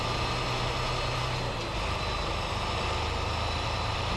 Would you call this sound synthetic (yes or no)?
no